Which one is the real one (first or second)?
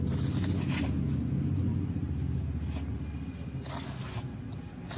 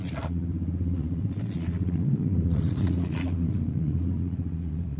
first